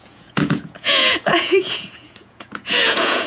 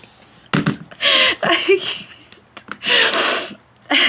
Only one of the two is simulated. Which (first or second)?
first